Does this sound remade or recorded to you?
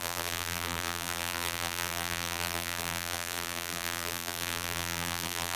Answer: remade